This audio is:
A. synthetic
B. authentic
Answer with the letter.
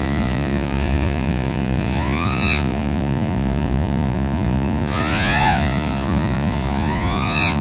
A